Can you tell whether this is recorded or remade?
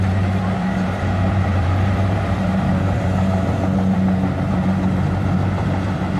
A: remade